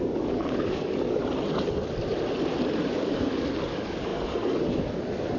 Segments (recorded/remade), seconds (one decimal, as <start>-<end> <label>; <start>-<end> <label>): 0.0-1.2 remade; 1.2-2.9 recorded; 2.9-5.4 remade